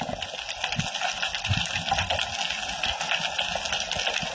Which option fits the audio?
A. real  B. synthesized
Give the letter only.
A